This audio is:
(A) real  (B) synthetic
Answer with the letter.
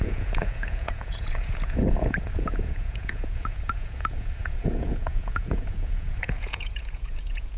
B